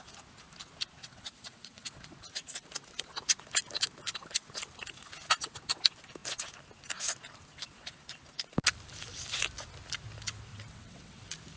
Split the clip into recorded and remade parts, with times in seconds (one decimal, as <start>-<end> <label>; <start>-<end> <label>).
0.0-1.0 recorded; 1.0-1.9 remade; 1.9-10.5 recorded; 10.5-11.2 remade; 11.2-11.6 recorded

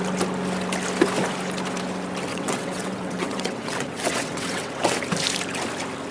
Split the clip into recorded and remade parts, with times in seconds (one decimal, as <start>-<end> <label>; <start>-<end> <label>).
0.0-2.3 recorded; 2.3-5.0 remade; 5.0-6.1 recorded

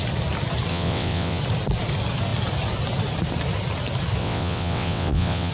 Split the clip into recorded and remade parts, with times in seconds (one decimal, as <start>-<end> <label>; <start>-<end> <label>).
0.0-0.7 recorded; 0.7-1.4 remade; 1.4-4.2 recorded; 4.2-5.5 remade

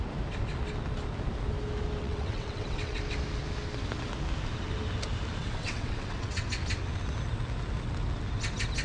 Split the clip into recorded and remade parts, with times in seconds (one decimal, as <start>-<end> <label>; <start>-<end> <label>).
0.0-2.0 recorded; 2.0-3.0 remade; 3.0-5.4 recorded; 5.4-6.4 remade; 6.4-8.8 recorded

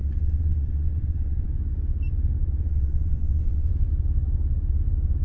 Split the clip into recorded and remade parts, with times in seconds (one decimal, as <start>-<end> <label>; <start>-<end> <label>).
0.0-1.5 remade; 1.5-2.7 recorded; 2.7-3.7 remade; 3.7-5.2 recorded

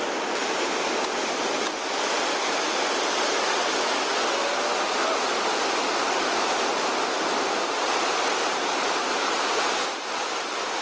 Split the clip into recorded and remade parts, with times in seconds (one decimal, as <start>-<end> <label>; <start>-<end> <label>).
0.0-10.8 recorded

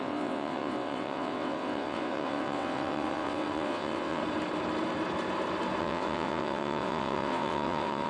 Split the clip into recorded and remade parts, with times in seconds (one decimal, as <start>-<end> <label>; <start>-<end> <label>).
0.0-4.2 remade; 4.2-5.8 recorded; 5.8-8.1 remade

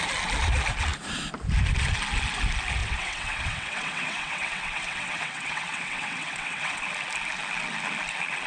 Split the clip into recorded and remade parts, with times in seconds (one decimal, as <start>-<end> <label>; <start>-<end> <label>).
0.0-2.8 recorded; 2.8-6.8 remade; 6.8-8.5 recorded